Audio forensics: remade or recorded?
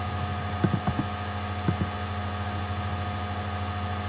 recorded